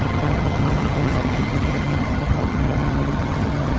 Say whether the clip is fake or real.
fake